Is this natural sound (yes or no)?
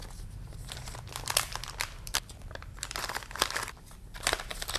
no